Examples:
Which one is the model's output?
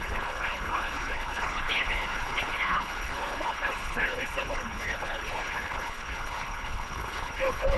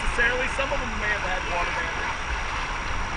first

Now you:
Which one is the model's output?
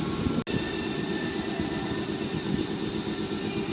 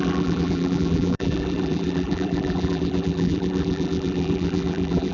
second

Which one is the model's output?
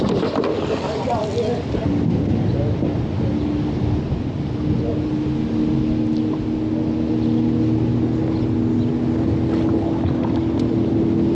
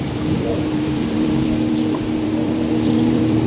second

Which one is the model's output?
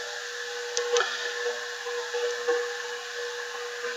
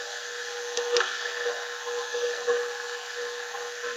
second